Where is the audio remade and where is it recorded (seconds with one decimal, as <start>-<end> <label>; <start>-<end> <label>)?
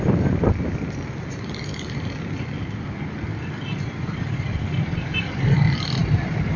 0.0-6.6 recorded